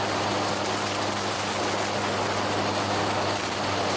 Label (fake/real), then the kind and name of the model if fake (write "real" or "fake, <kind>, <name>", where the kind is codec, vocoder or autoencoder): real